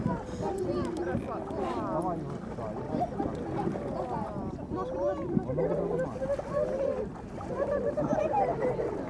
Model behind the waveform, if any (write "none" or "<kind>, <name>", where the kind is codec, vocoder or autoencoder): none